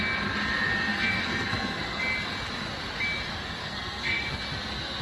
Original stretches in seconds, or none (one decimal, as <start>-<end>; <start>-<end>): 0.0-0.9; 2.0-3.6; 4.4-5.0